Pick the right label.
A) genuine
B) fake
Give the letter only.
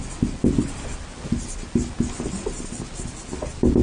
A